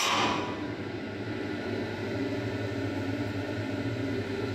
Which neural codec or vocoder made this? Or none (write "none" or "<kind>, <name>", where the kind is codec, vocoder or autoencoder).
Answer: none